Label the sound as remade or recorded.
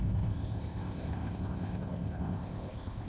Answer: remade